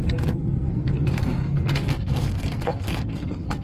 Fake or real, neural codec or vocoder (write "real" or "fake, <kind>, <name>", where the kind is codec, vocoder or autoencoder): fake, codec, SNAC